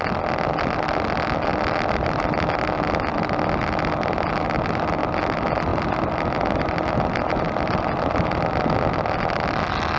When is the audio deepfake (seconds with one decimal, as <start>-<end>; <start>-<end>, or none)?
none